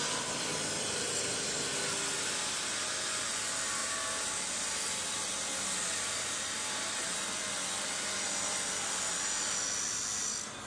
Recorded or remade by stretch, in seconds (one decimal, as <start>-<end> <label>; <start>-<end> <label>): 0.0-10.7 recorded